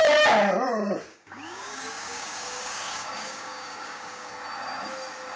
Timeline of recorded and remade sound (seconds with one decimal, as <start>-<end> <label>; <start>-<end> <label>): 0.0-1.1 recorded; 1.1-4.3 remade; 4.3-5.4 recorded